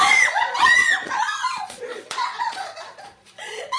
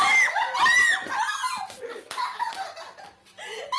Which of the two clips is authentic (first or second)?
second